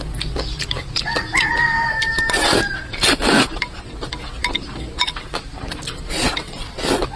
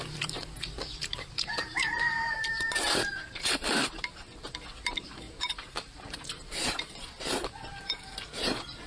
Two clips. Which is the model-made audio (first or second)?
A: second